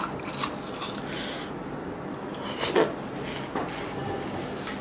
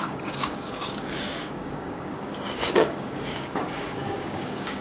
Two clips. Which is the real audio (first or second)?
first